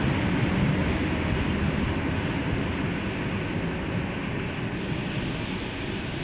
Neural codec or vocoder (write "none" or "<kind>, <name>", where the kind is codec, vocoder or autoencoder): none